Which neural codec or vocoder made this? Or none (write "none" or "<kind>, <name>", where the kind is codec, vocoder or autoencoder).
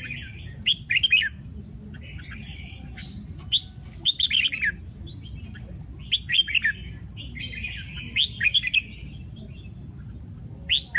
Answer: none